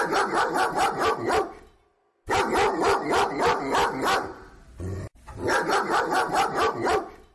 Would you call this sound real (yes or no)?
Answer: yes